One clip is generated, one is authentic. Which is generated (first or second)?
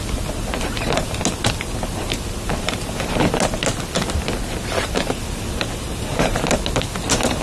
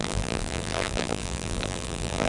second